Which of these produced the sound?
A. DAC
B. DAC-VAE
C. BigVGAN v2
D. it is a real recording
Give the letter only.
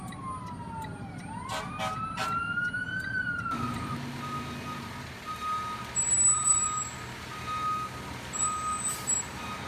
D